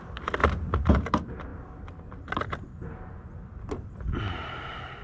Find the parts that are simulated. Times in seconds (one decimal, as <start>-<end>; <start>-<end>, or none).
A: none